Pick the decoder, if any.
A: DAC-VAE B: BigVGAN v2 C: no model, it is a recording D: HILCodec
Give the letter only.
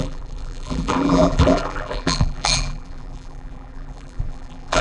B